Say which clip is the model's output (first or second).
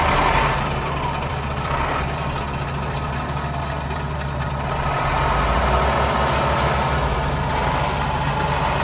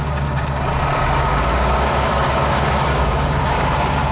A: second